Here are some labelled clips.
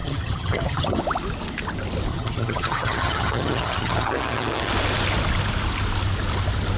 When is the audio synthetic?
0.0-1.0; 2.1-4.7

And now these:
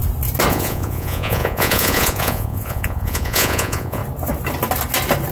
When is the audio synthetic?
0.5-4.0

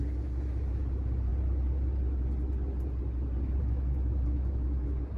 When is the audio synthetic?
0.0-1.3; 3.6-5.2

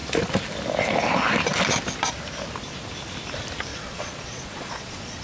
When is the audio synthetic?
3.7-5.2

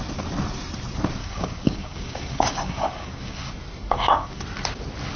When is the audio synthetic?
1.2-3.5; 3.9-4.4

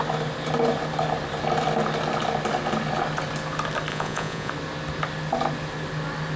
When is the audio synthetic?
3.9-4.5

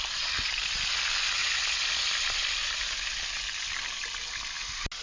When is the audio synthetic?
none